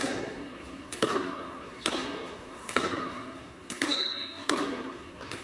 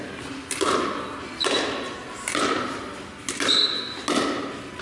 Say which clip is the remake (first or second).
first